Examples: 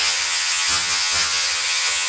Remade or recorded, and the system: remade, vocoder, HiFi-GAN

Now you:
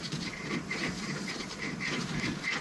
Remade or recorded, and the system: remade, vocoder, Vocos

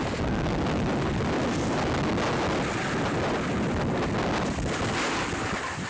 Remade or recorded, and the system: recorded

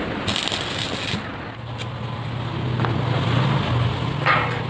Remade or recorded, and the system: recorded